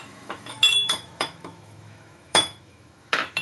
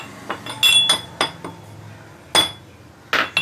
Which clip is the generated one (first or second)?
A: first